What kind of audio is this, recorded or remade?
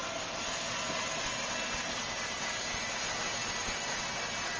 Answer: recorded